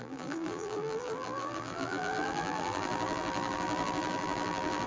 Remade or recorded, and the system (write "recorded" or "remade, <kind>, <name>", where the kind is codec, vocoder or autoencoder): remade, vocoder, BigVGAN v2